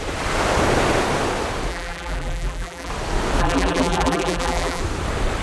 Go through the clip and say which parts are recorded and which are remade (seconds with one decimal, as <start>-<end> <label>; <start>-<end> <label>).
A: 0.0-1.7 recorded; 1.7-2.9 remade; 2.9-3.4 recorded; 3.4-4.8 remade; 4.8-5.4 recorded